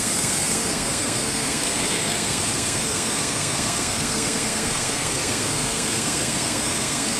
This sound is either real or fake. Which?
fake